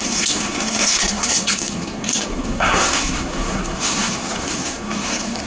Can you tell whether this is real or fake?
fake